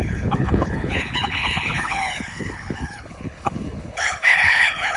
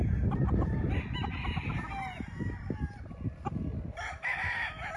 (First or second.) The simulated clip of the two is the first